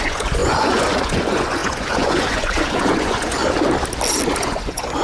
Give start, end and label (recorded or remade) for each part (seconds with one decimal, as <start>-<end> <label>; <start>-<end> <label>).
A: 0.0-3.4 remade; 3.4-4.4 recorded; 4.4-5.0 remade